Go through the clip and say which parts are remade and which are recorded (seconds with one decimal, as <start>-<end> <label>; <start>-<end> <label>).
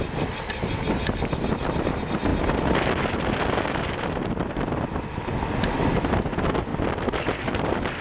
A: 0.0-8.0 recorded